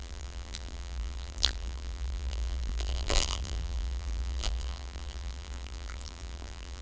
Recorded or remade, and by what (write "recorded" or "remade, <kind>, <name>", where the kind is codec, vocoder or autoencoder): remade, vocoder, BigVGAN v2